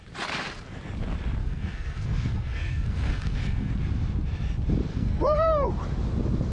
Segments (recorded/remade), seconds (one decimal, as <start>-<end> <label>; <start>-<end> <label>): 0.0-1.4 recorded; 1.4-3.7 remade; 3.7-4.9 recorded; 4.9-5.7 remade; 5.7-6.5 recorded